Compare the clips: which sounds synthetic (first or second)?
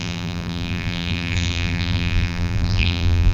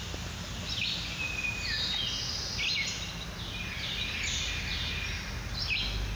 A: first